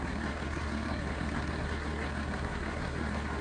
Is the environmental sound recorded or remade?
remade